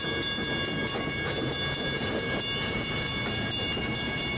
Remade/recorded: recorded